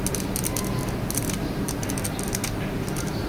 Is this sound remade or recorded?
recorded